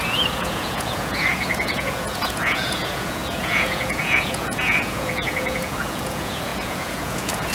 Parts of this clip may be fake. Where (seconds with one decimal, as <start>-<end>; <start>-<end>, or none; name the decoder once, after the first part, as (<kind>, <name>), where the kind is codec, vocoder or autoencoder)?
0.0-7.5 (vocoder, Vocos)